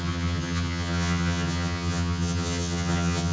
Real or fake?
fake